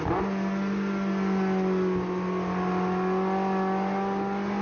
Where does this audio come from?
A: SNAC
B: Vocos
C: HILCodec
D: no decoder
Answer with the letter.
D